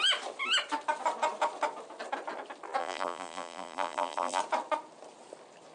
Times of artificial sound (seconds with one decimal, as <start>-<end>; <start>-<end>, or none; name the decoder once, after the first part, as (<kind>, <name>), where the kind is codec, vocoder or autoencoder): 2.8-4.4 (vocoder, BigVGAN v2)